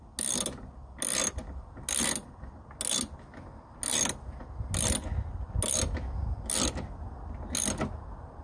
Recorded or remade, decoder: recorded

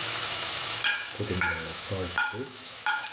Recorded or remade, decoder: remade, autoencoder, DAC-VAE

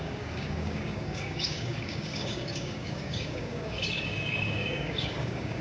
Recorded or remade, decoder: remade, codec, DAC